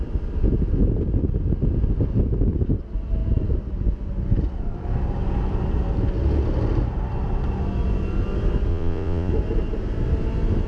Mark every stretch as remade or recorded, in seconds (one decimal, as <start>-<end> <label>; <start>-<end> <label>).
0.0-8.7 recorded; 8.7-9.3 remade; 9.3-10.7 recorded